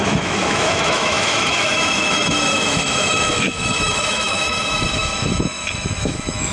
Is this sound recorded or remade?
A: remade